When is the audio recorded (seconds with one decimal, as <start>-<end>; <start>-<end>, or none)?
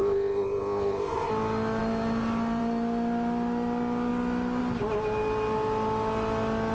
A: 1.3-6.7